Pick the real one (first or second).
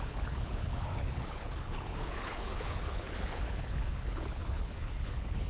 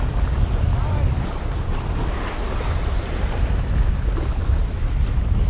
second